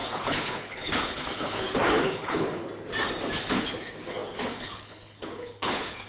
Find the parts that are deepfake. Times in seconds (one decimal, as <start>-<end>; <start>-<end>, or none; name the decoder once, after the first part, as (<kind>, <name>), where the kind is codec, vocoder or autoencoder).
0.0-2.6 (codec, HILCodec); 3.6-6.1